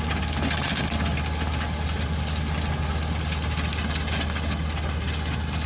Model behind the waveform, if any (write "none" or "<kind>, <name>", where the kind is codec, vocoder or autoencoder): none